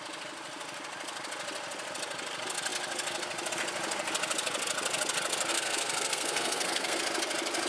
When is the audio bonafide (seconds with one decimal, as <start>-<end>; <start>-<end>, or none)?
0.0-5.5; 7.0-7.7